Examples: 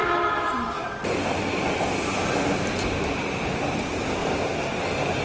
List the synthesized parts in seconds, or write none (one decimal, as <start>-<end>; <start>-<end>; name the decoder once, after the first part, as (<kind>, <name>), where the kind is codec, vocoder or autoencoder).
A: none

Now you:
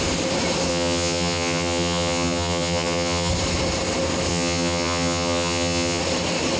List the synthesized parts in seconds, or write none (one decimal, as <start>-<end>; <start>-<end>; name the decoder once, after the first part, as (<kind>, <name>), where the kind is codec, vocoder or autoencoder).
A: 0.7-3.3 (vocoder, HiFi-GAN); 4.3-6.0

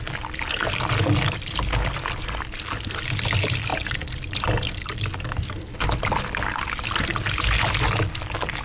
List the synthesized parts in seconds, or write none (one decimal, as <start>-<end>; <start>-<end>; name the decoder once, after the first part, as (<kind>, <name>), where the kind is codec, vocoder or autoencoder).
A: none

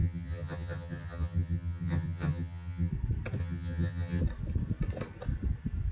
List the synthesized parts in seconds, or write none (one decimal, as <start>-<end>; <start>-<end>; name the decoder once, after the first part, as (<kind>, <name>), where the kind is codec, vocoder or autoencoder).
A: 0.0-2.9 (vocoder, HiFi-GAN); 3.4-4.2